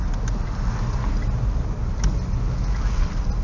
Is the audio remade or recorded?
recorded